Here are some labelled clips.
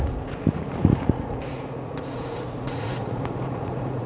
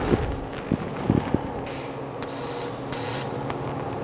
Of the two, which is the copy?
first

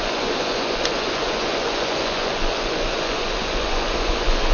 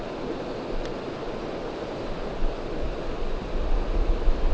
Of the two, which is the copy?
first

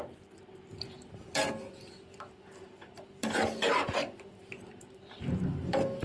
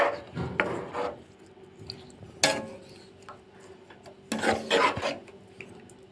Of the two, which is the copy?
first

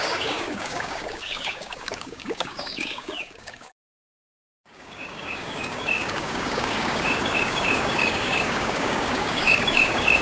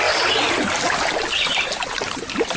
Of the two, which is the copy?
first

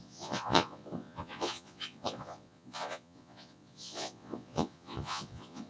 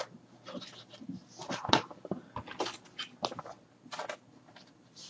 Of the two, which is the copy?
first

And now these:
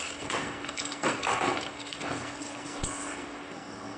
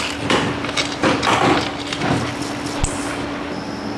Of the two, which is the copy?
first